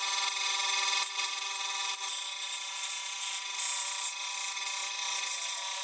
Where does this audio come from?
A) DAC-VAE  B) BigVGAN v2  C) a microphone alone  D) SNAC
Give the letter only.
C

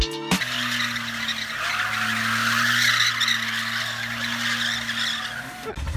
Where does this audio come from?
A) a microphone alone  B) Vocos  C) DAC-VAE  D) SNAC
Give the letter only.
A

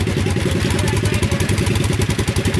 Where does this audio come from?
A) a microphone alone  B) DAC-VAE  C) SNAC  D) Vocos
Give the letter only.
A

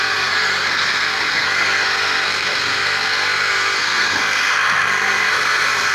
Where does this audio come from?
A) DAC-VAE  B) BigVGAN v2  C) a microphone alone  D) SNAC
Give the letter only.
D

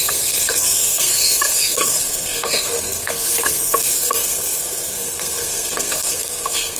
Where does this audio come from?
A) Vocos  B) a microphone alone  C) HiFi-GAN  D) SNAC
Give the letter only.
D